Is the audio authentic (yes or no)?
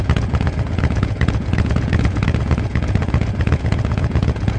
no